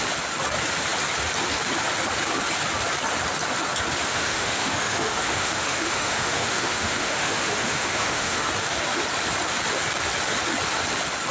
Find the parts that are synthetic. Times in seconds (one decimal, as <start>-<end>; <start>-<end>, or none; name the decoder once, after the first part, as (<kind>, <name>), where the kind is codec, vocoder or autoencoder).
4.1-8.5 (autoencoder, DAC-VAE)